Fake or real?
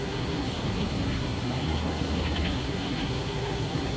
fake